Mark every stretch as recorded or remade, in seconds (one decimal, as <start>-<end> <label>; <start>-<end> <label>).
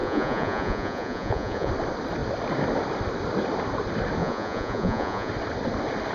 0.0-1.7 remade; 1.7-4.2 recorded; 4.2-5.3 remade; 5.3-6.1 recorded